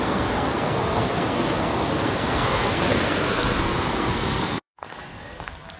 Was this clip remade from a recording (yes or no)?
yes